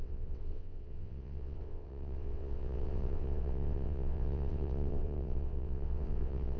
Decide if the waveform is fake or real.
fake